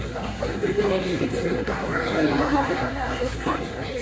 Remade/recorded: remade